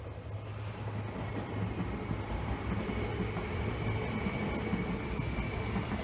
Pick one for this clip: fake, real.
real